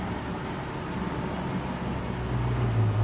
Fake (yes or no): no